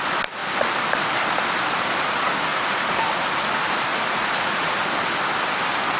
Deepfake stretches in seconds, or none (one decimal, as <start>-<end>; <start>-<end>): 2.5-3.5; 3.9-4.8

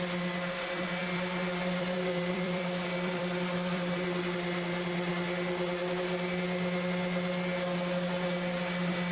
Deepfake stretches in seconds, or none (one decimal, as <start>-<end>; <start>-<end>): 1.0-5.1

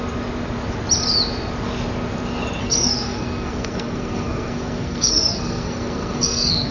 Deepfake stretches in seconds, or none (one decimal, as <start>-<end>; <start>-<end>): 2.6-6.7

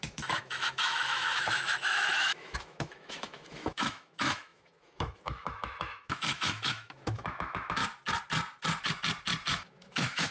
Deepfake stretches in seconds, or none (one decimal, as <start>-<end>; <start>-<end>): 0.0-7.8; 9.5-10.3